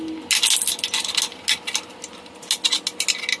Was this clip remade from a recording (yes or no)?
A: no